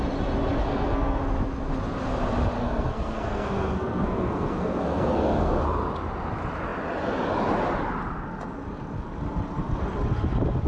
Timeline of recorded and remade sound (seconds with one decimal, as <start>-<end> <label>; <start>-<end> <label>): 0.0-0.6 recorded; 0.6-1.2 remade; 1.2-2.6 recorded; 2.6-5.6 remade; 5.6-10.7 recorded